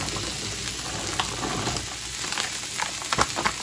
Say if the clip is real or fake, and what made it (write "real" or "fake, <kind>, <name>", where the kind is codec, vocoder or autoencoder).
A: real